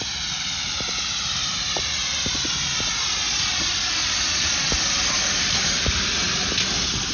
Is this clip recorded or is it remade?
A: recorded